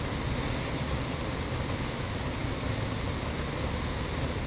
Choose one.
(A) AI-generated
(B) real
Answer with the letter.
B